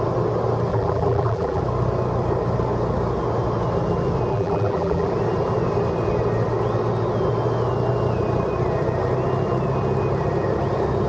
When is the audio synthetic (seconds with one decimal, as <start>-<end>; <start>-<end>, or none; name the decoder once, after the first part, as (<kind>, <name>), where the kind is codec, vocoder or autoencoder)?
0.7-1.6 (vocoder, BigVGAN v2); 4.3-5.1